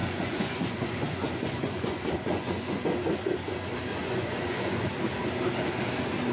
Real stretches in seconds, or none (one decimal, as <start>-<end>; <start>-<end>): 2.8-4.0; 4.9-6.3